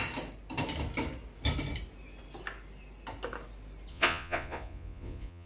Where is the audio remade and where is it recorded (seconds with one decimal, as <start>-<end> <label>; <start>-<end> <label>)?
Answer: 0.0-3.9 recorded; 3.9-5.5 remade